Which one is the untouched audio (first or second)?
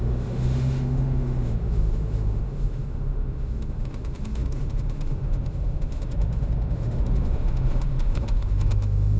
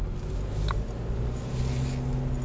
second